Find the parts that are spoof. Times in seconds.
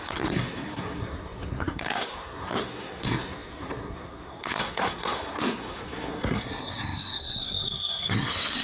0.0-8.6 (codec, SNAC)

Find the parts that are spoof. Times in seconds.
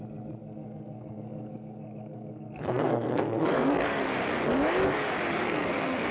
0.4-4.1 (codec, SNAC); 5.3-6.1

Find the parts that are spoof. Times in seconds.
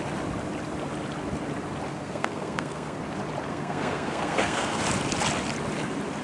1.9-3.0 (codec, SNAC); 3.5-4.8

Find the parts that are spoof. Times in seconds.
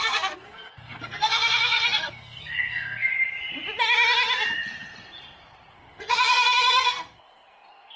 0.0-3.1 (codec, SNAC); 5.7-8.0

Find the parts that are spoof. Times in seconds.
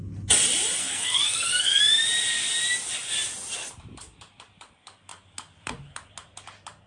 0.8-1.8 (codec, SNAC)